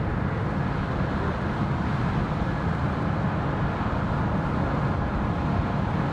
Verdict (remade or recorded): recorded